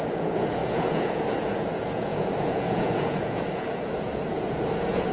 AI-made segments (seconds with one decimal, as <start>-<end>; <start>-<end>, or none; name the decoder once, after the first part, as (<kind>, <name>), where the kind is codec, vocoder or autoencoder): 0.0-5.1 (vocoder, Vocos)